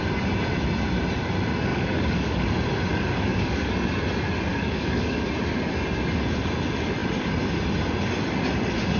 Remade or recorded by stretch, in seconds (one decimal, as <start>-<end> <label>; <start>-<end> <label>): 0.0-1.7 recorded; 1.7-2.5 remade; 2.5-2.9 recorded; 2.9-3.7 remade; 3.7-4.5 recorded; 4.5-5.3 remade; 5.3-9.0 recorded